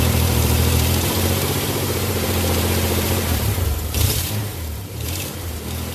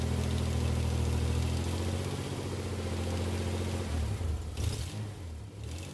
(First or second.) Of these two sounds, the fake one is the first